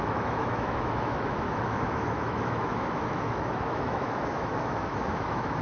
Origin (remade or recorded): remade